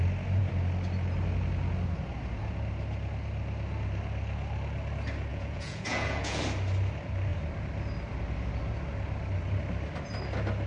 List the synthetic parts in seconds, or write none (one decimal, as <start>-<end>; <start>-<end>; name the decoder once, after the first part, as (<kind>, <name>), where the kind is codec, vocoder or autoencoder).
5.3-6.4 (vocoder, Vocos)